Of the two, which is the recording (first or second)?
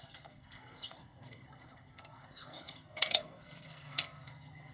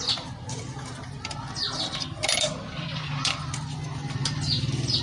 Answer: second